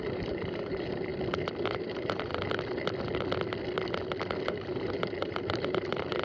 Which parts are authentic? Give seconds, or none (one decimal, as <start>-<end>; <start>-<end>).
1.1-1.6; 2.3-4.4